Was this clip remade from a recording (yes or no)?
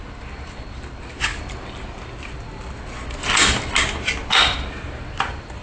no